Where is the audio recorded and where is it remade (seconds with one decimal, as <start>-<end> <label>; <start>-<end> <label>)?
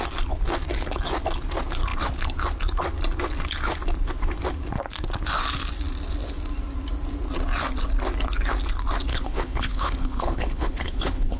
0.0-9.1 recorded; 9.1-11.4 remade